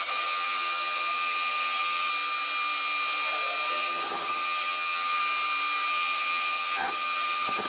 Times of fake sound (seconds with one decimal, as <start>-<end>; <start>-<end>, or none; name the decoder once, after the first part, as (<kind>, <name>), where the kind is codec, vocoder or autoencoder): 0.0-2.1 (vocoder, HiFi-GAN); 3.7-5.2; 5.9-7.7